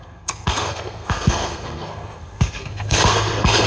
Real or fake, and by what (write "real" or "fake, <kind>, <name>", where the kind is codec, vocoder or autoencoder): fake, codec, SNAC